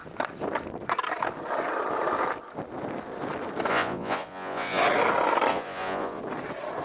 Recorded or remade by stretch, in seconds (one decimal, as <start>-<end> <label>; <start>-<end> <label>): 0.0-3.7 recorded; 3.7-4.8 remade; 4.8-5.5 recorded; 5.5-6.2 remade; 6.2-6.8 recorded